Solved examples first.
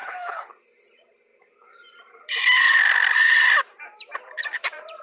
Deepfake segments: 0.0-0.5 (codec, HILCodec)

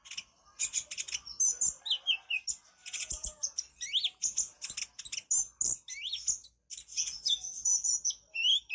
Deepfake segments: 2.8-3.6 (vocoder, Vocos); 6.9-8.1

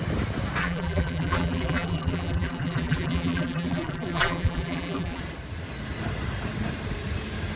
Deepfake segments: 0.6-5.2 (vocoder, BigVGAN v2)

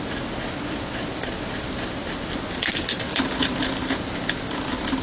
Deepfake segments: none

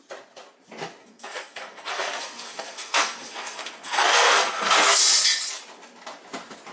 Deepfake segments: 1.0-5.0 (codec, SNAC)

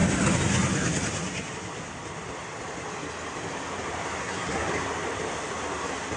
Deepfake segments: 4.2-4.7 (codec, SNAC)